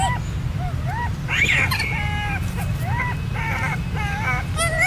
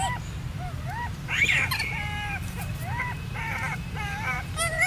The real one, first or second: first